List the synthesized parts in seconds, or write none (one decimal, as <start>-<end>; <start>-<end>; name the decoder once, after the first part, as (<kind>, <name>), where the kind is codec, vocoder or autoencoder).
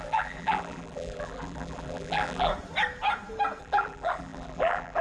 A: 0.0-2.5 (vocoder, BigVGAN v2); 3.6-5.0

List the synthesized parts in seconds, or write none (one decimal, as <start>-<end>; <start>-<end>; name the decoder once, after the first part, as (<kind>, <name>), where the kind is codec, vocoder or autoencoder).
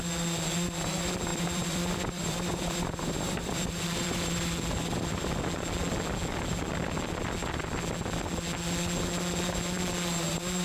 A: 1.3-5.4 (vocoder, BigVGAN v2)